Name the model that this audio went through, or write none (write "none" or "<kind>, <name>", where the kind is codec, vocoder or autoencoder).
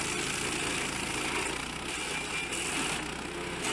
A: none